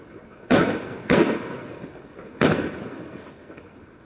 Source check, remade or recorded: remade